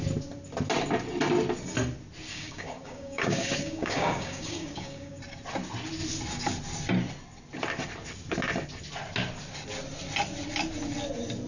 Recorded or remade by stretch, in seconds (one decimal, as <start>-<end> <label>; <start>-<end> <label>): 0.0-2.3 recorded; 2.3-5.2 remade; 5.2-11.5 recorded

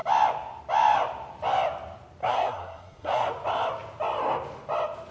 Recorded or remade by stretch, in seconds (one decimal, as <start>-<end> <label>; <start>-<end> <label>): 0.0-2.2 recorded; 2.2-3.3 remade; 3.3-5.1 recorded

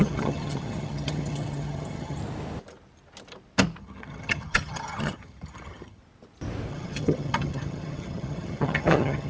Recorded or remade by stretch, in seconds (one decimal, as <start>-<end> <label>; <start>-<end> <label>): 0.0-2.2 remade; 2.2-3.8 recorded; 3.8-6.0 remade; 6.0-6.7 recorded; 6.7-9.3 remade

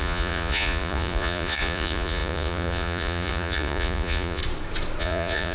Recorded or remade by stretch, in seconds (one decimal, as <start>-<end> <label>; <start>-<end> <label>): 0.0-4.4 remade; 4.4-5.0 recorded; 5.0-5.5 remade